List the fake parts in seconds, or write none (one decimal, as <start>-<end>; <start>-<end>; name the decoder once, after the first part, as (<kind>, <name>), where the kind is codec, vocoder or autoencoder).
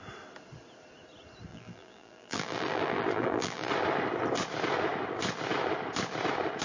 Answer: 1.5-3.7 (vocoder, BigVGAN v2)